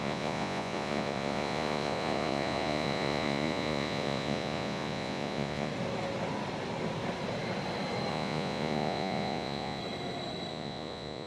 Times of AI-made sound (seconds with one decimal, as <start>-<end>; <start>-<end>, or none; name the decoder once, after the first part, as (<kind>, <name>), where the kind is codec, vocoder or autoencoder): 0.0-5.7 (vocoder, Vocos); 8.1-9.8; 10.5-11.3